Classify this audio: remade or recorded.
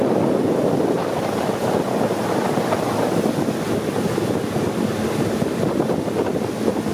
recorded